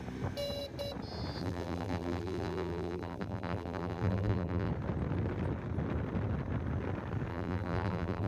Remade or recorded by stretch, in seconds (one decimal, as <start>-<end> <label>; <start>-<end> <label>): 0.0-1.4 recorded; 1.4-4.7 remade; 4.7-7.3 recorded; 7.3-8.3 remade

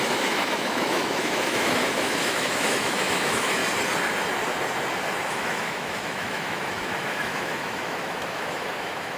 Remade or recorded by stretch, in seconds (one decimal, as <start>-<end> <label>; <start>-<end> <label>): 0.0-3.6 remade; 3.6-5.3 recorded; 5.3-9.2 remade

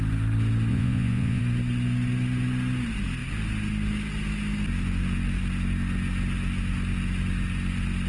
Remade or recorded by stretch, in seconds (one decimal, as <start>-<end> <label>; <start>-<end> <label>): 0.0-0.7 recorded; 0.7-1.4 remade; 1.4-8.1 recorded

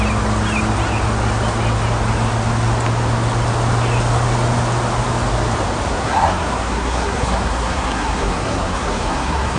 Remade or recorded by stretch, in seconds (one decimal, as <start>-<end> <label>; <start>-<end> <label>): 0.0-5.9 recorded; 5.9-9.6 remade

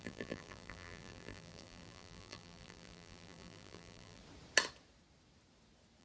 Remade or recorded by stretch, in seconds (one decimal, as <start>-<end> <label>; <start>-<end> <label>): 0.0-4.2 remade; 4.2-6.0 recorded